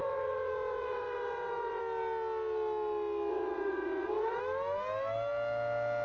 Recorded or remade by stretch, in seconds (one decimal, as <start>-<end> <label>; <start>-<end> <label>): 0.0-1.8 remade; 1.8-3.3 recorded; 3.3-4.4 remade; 4.4-6.0 recorded